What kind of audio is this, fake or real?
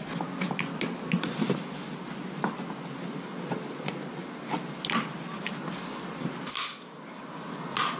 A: real